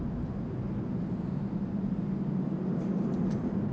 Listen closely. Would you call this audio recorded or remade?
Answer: recorded